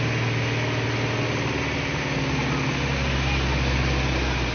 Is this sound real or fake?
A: real